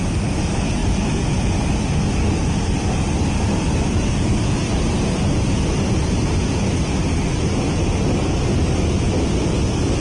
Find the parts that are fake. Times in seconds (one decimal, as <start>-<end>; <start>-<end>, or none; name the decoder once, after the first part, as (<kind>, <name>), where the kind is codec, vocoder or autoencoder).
none